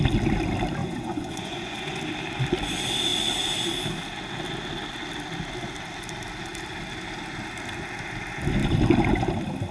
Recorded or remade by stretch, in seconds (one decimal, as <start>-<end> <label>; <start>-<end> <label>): 0.0-0.8 recorded; 0.8-2.0 remade; 2.0-9.7 recorded